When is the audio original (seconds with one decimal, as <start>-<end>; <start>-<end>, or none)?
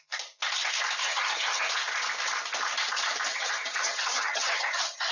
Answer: 0.0-1.0; 1.7-3.3